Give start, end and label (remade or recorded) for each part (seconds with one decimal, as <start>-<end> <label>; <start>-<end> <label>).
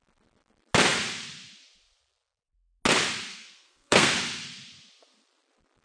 0.0-3.3 recorded; 3.3-4.1 remade; 4.1-5.8 recorded